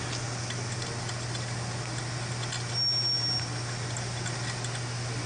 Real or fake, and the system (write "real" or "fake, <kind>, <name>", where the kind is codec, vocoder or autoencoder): real